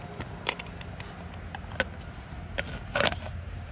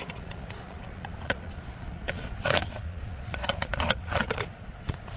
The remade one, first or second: second